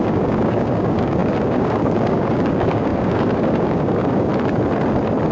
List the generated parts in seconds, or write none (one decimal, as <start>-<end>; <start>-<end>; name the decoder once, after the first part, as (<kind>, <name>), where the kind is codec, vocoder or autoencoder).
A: 0.0-4.3 (codec, DAC)